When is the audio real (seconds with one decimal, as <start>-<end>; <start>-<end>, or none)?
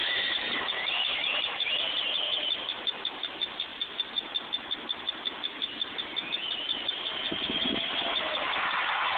0.6-1.2; 2.0-7.1; 8.7-9.2